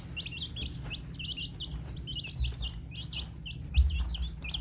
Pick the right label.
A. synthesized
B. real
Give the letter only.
B